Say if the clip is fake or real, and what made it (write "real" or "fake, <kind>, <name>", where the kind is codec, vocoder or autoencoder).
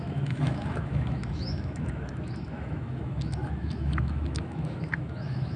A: fake, autoencoder, DAC-VAE